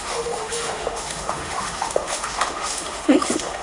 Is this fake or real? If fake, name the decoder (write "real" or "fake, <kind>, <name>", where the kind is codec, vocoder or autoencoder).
fake, autoencoder, DAC-VAE